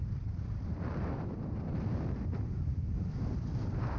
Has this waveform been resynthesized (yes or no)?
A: yes